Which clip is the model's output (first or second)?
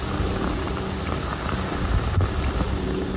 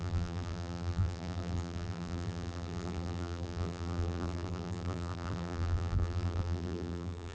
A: second